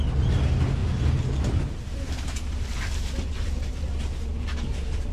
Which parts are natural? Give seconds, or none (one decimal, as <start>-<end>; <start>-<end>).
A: 0.0-0.8; 3.9-4.3